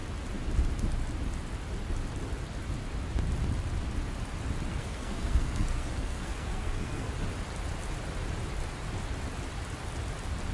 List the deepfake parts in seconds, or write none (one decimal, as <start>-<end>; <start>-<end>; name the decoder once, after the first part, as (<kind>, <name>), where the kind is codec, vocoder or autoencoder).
4.7-7.1 (codec, SNAC)